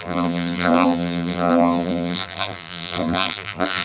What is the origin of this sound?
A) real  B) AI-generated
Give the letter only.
B